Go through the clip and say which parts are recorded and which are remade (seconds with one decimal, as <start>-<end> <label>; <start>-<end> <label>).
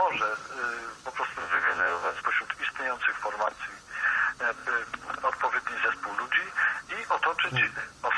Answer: 0.0-1.4 recorded; 1.4-2.2 remade; 2.2-8.2 recorded